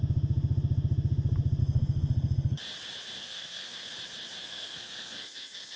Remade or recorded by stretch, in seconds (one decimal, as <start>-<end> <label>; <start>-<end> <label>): 0.0-1.6 recorded; 1.6-2.6 remade; 2.6-3.2 recorded; 3.2-3.9 remade; 3.9-4.4 recorded; 4.4-5.8 remade

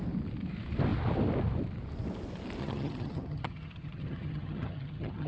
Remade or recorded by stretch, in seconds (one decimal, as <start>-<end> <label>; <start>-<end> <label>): 0.0-2.6 recorded; 2.6-5.3 remade

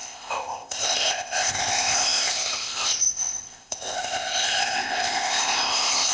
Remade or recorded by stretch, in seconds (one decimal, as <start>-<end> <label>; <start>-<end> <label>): 0.0-6.1 remade